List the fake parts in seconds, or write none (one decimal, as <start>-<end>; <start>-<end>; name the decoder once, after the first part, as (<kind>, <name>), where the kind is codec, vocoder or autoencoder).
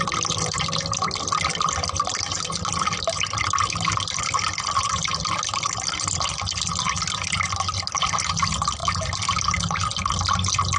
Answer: none